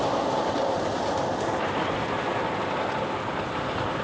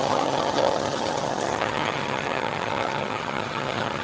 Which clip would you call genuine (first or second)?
first